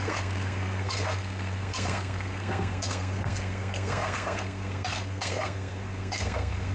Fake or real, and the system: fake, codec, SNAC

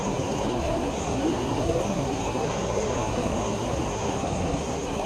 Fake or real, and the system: fake, codec, SNAC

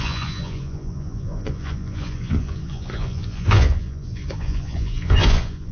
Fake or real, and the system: fake, vocoder, Vocos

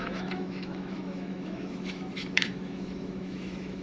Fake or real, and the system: fake, autoencoder, DAC-VAE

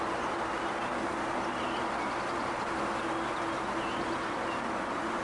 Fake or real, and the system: real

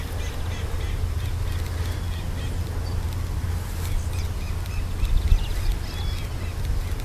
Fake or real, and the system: real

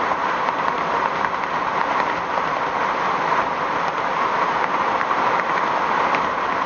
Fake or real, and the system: real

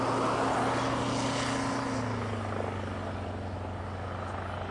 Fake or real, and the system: real